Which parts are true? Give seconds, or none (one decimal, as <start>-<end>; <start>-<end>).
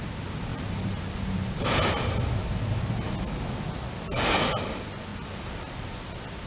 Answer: 0.0-0.5; 1.9-5.1; 5.7-6.5